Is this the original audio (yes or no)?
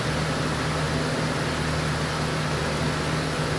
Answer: yes